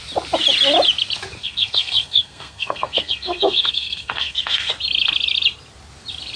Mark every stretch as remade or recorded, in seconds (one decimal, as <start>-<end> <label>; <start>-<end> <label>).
0.0-1.4 recorded; 1.4-4.7 remade; 4.7-6.4 recorded